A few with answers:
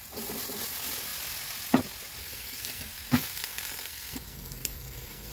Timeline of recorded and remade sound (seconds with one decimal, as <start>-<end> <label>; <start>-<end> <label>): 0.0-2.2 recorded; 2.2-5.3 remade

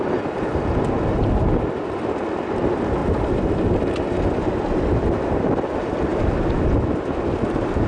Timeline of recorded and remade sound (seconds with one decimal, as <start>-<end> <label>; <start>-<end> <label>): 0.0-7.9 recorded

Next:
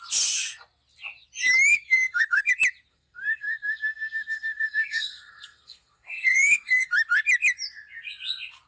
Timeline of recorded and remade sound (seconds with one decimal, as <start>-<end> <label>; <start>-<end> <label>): 0.0-1.7 recorded; 1.7-2.5 remade; 2.5-2.9 recorded; 2.9-6.9 remade; 6.9-8.7 recorded